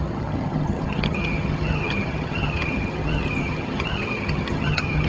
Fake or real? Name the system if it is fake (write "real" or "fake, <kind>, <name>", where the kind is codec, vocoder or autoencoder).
fake, vocoder, HiFi-GAN